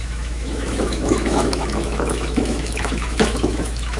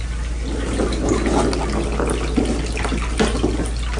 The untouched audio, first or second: second